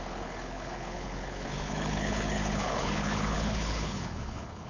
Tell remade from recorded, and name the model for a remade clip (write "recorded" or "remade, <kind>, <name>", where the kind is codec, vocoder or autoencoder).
remade, codec, HILCodec